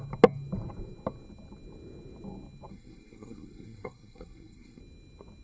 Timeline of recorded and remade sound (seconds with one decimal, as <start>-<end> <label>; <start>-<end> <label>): 0.0-2.7 recorded; 2.7-4.8 remade; 4.8-5.4 recorded